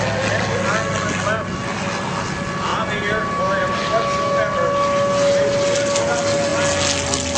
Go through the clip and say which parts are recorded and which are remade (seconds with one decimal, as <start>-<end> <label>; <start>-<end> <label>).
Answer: 0.0-7.4 recorded